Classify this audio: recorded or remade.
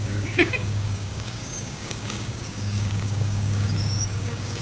remade